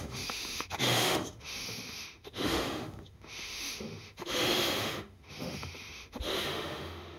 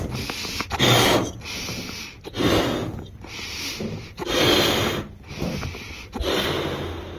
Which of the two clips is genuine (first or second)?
second